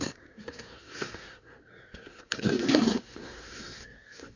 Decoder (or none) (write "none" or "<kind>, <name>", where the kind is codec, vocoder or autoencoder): codec, SNAC